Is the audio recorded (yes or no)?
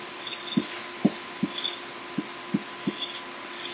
yes